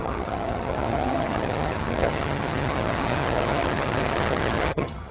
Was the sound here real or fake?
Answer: fake